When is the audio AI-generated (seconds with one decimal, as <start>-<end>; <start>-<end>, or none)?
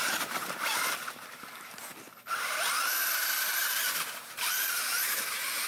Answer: 0.0-5.7